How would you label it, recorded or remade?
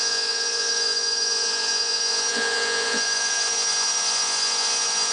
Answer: remade